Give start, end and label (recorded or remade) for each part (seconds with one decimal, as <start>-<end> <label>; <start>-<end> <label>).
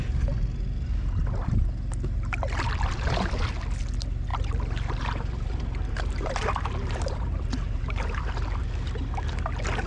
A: 0.0-4.3 recorded; 4.3-8.6 remade; 8.6-9.9 recorded